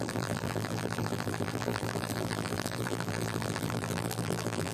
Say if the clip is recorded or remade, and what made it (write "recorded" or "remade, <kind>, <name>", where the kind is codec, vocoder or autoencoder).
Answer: remade, vocoder, BigVGAN v2